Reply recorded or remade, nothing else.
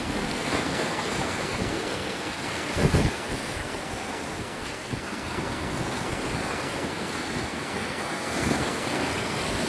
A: remade